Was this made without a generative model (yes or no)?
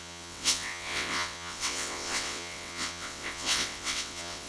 no